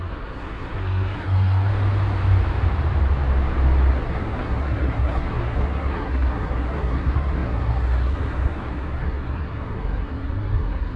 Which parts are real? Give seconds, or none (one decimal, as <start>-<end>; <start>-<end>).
1.7-3.9